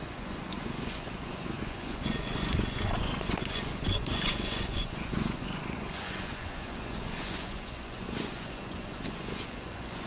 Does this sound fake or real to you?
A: fake